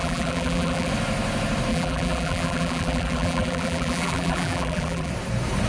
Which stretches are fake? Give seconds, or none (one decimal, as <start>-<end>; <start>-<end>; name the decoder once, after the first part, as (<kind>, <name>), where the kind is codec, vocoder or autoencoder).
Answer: 0.0-0.9 (vocoder, BigVGAN v2); 1.7-5.1